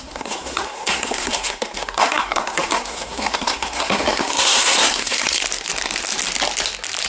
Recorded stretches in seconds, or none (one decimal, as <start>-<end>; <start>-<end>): 5.4-7.1